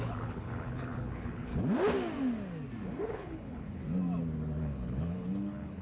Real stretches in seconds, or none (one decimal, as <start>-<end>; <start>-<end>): 1.5-3.0; 3.8-4.6